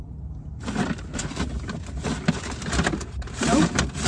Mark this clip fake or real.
real